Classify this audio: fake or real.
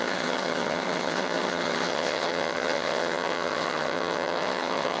fake